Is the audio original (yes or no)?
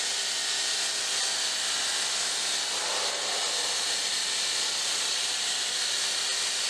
yes